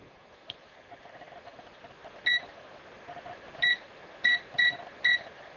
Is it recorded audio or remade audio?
recorded